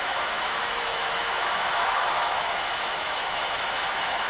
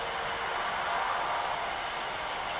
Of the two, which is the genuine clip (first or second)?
second